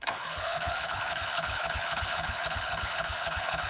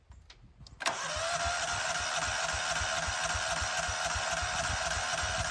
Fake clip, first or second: first